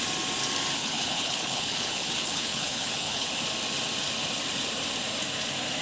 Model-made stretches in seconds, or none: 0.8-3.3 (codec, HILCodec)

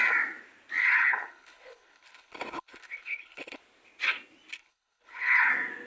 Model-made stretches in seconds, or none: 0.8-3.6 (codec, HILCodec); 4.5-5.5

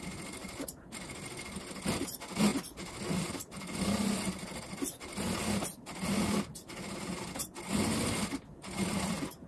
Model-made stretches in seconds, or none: none

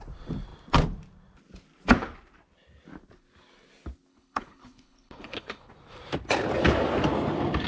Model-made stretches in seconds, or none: 4.1-5.7 (codec, HILCodec)

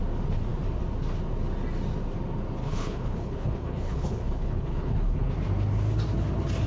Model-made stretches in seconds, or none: 2.6-5.2 (codec, HILCodec)

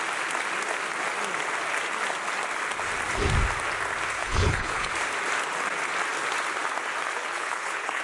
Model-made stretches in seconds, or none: 4.2-4.9 (codec, HILCodec); 7.1-8.0

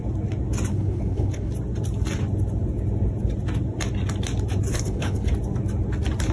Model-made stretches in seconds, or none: 0.7-1.5 (codec, HILCodec); 4.7-5.3